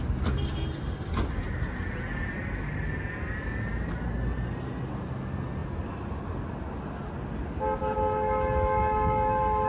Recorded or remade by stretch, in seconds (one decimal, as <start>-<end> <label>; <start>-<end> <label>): 0.0-9.7 recorded